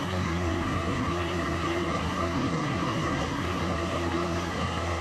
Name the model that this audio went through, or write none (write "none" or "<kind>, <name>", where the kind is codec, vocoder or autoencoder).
codec, SNAC